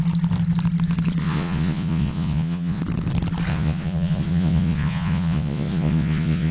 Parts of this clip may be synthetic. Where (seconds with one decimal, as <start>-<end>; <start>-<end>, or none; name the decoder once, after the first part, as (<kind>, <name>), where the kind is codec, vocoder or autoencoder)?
1.2-2.8 (vocoder, Vocos); 3.5-6.5